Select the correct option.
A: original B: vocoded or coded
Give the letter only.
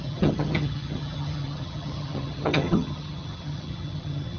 B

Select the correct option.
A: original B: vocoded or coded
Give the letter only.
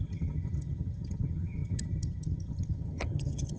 B